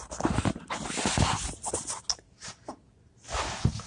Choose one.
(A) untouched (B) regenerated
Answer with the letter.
A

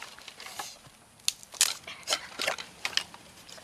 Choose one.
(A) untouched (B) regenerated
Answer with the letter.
A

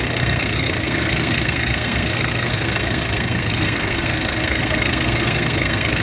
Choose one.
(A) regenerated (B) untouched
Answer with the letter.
A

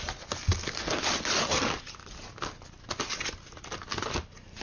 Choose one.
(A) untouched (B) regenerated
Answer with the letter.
A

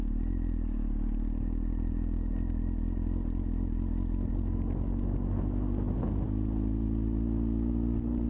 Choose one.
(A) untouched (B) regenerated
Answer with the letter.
A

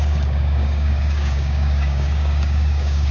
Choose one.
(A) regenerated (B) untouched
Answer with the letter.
A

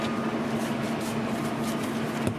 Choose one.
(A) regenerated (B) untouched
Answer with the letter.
B